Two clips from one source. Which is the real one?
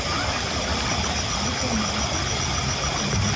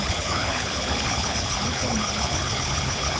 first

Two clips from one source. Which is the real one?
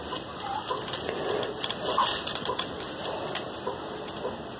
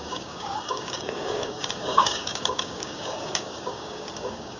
first